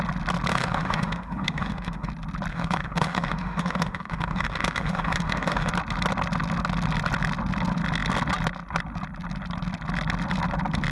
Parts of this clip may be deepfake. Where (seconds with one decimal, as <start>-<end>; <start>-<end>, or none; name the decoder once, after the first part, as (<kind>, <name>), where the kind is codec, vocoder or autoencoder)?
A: 0.5-2.1 (autoencoder, DAC-VAE); 2.5-5.7